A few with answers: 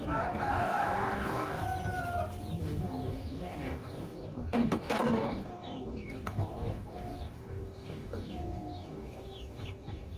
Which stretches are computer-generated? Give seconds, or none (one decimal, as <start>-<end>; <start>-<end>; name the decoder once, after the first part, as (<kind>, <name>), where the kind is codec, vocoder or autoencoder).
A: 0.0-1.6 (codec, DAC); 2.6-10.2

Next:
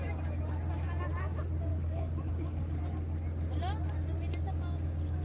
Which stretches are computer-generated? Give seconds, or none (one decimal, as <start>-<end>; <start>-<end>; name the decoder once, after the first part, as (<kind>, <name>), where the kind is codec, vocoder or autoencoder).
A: 1.7-2.8 (codec, DAC)

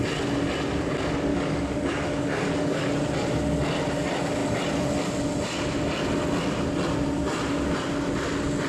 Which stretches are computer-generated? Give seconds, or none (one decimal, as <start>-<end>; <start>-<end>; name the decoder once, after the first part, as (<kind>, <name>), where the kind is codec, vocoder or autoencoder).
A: 1.3-2.9 (codec, DAC)

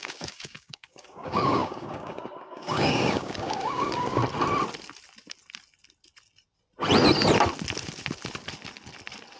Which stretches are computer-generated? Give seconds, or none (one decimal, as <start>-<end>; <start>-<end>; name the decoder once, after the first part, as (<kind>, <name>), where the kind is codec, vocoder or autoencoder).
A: 0.0-4.2 (codec, DAC)